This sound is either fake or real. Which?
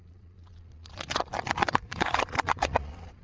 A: fake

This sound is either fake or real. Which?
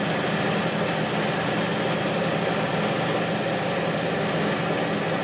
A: real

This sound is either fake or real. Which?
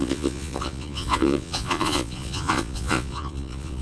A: fake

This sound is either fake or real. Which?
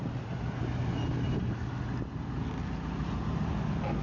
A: real